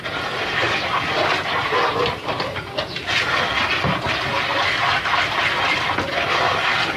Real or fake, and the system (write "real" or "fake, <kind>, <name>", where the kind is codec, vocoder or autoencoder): real